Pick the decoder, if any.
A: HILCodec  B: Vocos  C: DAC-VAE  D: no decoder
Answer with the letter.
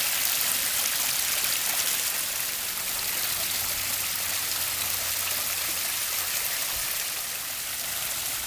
D